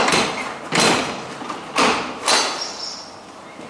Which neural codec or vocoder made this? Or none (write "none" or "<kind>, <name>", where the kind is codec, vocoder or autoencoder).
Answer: none